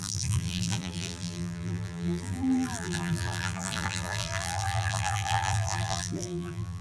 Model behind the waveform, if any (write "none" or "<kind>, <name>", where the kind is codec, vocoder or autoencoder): vocoder, BigVGAN v2